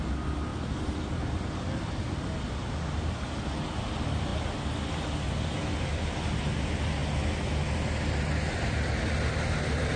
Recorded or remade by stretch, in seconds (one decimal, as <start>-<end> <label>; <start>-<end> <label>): 0.0-10.0 recorded